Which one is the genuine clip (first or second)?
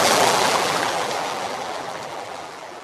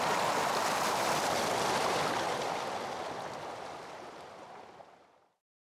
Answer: second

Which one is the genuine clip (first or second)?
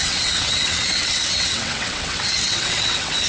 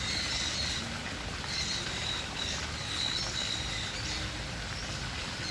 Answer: second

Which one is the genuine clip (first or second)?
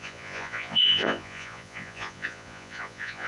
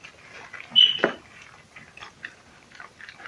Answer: second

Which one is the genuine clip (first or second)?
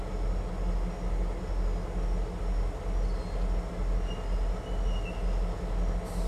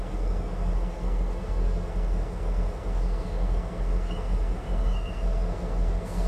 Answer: first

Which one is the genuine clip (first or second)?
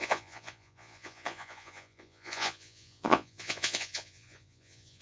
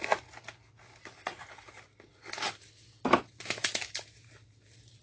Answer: second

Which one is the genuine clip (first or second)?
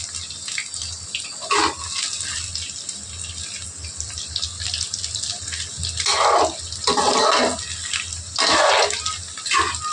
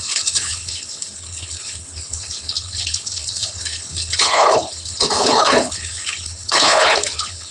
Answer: first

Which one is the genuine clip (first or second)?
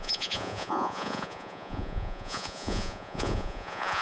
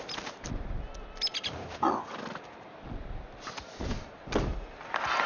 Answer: second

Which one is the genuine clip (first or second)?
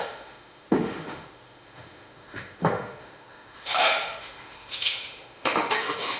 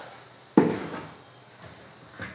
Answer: second